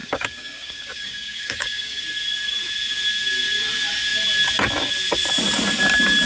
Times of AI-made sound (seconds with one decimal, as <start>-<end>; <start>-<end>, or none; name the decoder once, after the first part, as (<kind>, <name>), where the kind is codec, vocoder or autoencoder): 0.0-2.0 (codec, DAC)